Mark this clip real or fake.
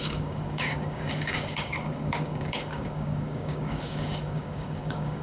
fake